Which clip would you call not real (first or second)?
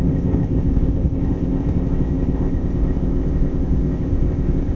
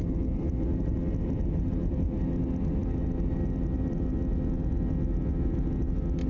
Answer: first